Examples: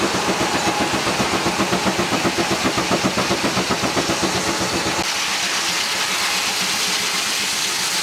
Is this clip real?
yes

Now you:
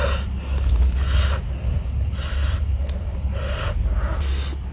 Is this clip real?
yes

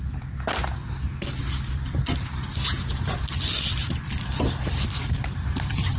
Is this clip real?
yes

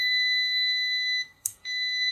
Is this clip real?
no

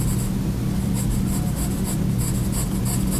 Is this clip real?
yes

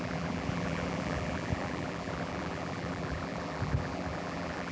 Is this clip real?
no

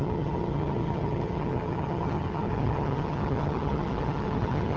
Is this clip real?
no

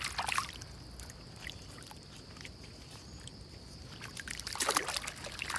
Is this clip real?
yes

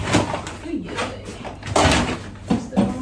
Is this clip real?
yes